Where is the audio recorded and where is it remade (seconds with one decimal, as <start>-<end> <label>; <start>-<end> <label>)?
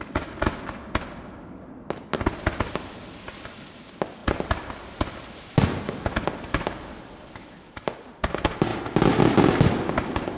0.0-10.4 recorded